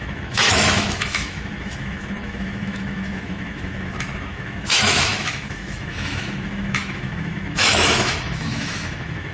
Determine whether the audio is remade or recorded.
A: remade